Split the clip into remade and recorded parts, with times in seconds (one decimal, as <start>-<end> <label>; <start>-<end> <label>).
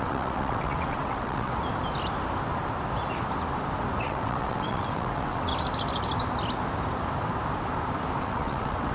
0.0-1.6 remade; 1.6-4.0 recorded; 4.0-5.5 remade; 5.5-8.2 recorded; 8.2-8.9 remade